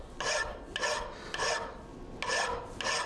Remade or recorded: recorded